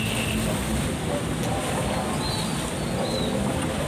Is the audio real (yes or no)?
yes